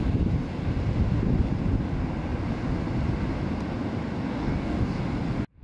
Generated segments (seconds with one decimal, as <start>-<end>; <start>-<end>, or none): 4.3-5.0